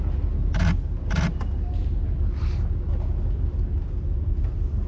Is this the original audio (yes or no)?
yes